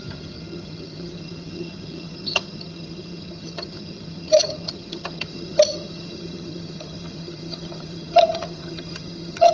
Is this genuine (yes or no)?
no